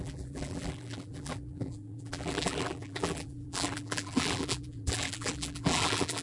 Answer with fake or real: fake